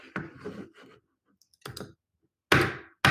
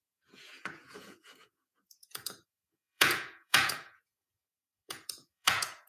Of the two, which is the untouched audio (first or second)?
first